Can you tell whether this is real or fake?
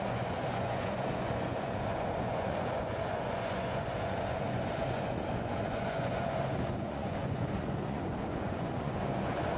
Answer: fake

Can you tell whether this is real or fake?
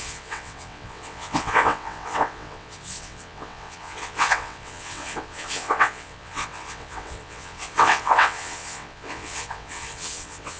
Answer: fake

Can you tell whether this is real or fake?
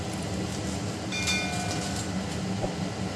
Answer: real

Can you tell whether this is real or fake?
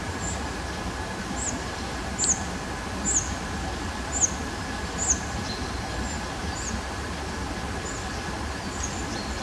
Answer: real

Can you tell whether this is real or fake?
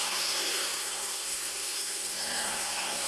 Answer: fake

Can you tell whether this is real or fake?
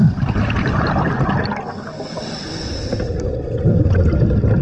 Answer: real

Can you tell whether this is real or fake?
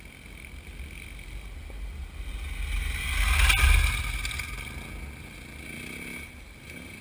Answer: real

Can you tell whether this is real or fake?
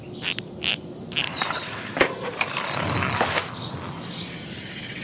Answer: real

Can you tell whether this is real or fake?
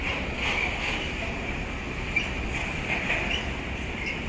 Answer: real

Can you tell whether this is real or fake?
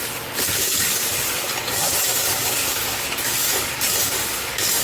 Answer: fake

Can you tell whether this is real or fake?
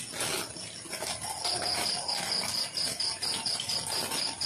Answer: real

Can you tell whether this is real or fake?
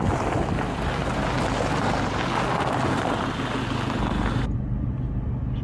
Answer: real